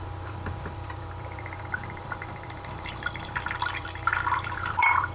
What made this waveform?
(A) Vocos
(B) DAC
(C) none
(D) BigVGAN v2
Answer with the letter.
D